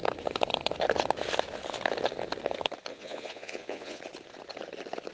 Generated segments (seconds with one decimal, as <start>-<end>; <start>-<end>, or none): 2.9-4.0